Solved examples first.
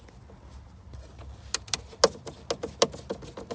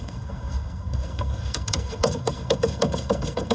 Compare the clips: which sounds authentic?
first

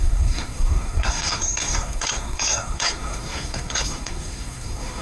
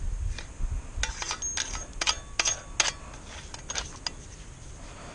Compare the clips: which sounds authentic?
second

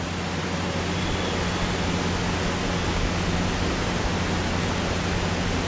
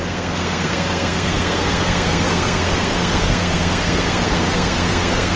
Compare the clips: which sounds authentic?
first